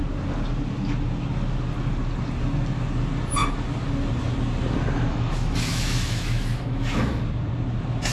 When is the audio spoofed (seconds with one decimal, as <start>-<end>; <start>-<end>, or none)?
5.1-7.2